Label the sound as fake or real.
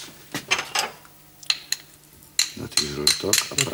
real